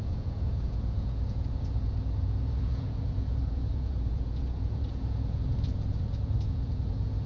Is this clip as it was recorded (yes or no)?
no